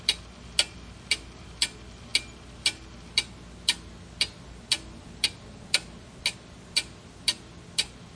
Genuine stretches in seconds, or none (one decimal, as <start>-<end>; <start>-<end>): 0.0-8.2